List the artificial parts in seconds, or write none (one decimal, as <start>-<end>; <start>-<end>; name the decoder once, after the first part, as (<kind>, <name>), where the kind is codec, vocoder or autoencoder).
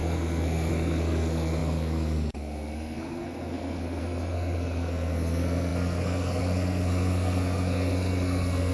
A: 0.0-8.7 (codec, SNAC)